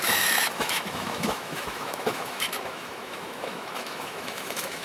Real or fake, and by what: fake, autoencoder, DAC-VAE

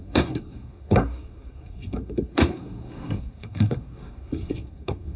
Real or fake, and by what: fake, codec, SNAC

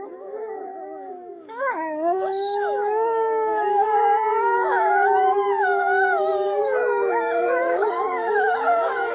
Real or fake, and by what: fake, codec, DAC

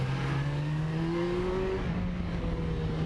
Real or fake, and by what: fake, codec, DAC